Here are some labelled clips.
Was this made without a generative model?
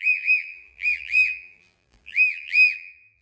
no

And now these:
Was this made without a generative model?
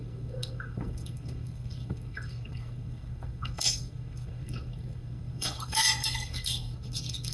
no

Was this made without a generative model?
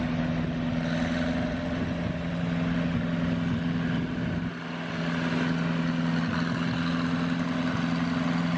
yes